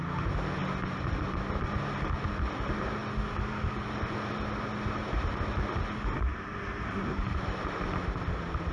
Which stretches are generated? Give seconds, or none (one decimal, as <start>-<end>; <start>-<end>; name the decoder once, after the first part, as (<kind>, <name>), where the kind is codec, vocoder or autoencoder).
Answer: none